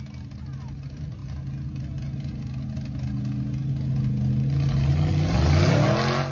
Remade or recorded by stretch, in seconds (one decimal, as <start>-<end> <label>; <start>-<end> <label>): 0.0-6.3 recorded